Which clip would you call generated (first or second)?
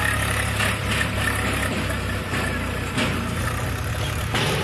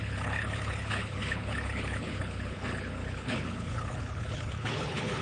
second